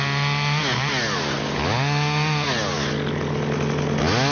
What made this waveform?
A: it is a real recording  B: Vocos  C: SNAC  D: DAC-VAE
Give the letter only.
A